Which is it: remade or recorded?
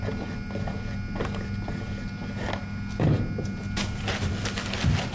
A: recorded